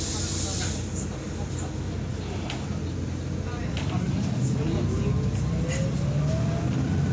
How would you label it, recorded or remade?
recorded